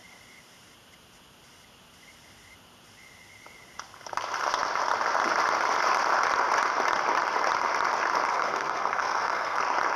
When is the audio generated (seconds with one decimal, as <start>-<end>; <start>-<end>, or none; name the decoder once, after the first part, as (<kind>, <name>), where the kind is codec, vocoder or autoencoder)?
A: 8.3-9.6 (codec, SNAC)